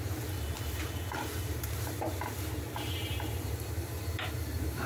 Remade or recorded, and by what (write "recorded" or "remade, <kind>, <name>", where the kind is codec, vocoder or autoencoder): remade, vocoder, BigVGAN v2